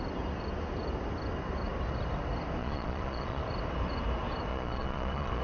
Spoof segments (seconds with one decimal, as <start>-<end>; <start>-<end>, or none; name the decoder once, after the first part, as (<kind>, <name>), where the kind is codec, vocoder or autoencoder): 2.6-3.4 (vocoder, Vocos); 4.5-5.4